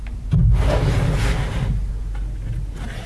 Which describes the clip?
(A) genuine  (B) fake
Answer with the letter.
A